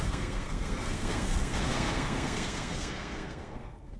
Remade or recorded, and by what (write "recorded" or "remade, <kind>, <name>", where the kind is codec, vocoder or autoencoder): remade, codec, SNAC